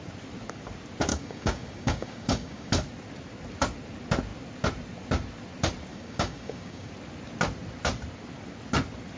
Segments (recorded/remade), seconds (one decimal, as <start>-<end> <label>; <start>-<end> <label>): 0.0-1.1 recorded; 1.1-2.7 remade; 2.7-5.9 recorded; 5.9-6.9 remade; 6.9-9.2 recorded